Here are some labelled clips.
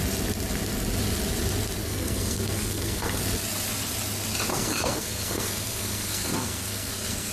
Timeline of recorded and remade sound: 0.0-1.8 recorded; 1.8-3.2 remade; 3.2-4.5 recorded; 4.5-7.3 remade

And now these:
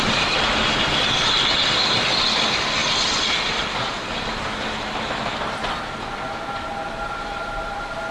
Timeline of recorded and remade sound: 0.0-8.1 recorded